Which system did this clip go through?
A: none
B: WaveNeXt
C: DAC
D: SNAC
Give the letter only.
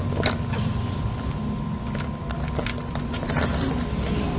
A